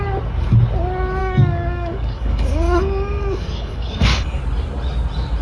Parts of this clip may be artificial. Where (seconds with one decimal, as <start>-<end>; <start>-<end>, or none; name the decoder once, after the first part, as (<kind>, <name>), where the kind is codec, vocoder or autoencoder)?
1.2-4.4 (codec, DAC)